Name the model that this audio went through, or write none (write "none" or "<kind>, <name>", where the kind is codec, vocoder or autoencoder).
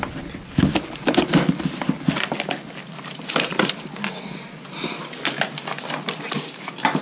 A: none